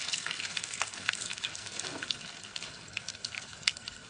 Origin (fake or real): fake